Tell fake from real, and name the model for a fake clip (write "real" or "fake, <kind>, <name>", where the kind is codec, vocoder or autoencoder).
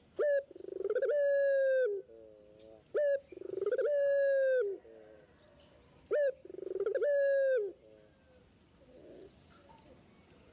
real